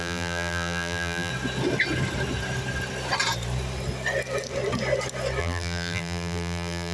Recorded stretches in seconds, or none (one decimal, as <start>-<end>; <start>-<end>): 1.3-5.4